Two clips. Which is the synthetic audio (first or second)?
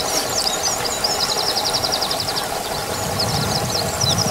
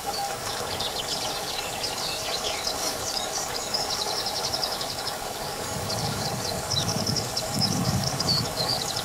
second